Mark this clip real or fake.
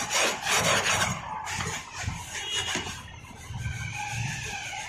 real